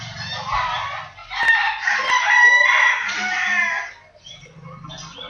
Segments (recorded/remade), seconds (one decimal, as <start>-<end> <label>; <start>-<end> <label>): 0.0-5.3 recorded